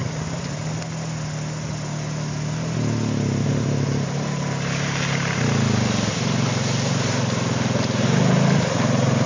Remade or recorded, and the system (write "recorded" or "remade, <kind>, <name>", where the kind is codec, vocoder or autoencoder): recorded